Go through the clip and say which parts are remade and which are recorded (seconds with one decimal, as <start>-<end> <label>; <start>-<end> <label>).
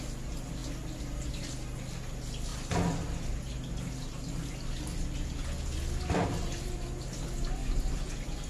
0.0-8.5 recorded